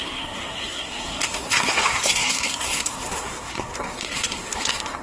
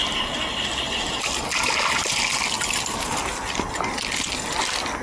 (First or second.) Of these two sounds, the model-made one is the first